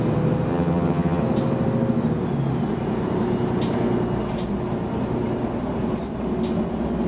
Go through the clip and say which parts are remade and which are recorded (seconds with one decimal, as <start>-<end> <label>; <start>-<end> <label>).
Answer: 0.0-0.5 recorded; 0.5-1.2 remade; 1.2-7.1 recorded